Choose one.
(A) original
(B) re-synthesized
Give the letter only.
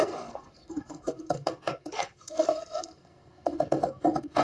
B